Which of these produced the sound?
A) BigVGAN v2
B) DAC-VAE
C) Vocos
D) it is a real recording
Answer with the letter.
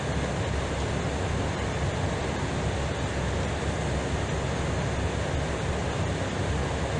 D